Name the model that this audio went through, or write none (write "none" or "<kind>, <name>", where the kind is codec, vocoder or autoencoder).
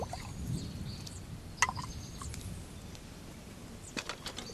none